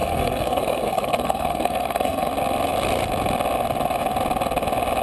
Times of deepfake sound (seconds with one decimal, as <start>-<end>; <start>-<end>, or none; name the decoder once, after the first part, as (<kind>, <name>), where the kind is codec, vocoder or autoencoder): 0.0-2.3 (codec, SNAC)

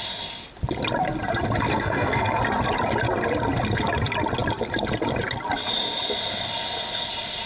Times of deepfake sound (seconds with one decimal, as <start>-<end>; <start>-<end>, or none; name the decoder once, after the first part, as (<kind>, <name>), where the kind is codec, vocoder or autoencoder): 1.7-2.4 (codec, SNAC)

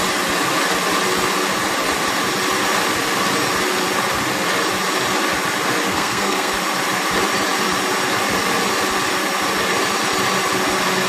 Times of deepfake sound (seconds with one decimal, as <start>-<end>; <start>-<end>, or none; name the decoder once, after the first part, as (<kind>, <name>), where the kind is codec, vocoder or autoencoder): 5.9-6.5 (codec, SNAC)

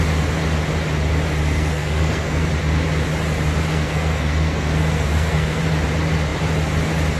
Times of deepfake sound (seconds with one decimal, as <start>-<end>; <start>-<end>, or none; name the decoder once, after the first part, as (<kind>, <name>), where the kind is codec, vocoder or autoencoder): 1.4-2.5 (codec, SNAC); 3.7-5.6

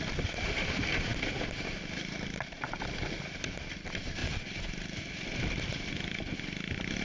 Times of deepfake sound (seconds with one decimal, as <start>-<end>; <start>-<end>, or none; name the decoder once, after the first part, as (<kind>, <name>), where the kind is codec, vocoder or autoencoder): none

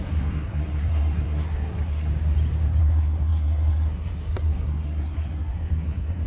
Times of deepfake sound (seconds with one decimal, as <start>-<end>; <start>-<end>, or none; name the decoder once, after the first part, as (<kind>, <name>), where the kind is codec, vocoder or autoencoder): 0.0-2.1 (codec, SNAC); 2.8-6.3

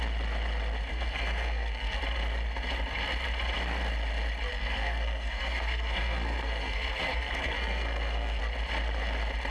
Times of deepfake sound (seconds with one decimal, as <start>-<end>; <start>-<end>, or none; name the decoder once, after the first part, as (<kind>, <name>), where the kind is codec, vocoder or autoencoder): 0.9-2.0 (codec, SNAC); 4.5-8.4

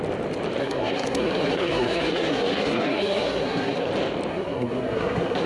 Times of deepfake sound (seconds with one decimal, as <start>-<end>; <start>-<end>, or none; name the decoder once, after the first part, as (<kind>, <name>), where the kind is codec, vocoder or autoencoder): 0.6-3.9 (codec, SNAC); 4.3-5.5